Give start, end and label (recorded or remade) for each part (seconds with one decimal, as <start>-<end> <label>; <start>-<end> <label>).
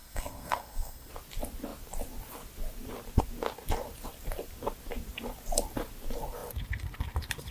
0.0-1.1 remade; 1.1-7.5 recorded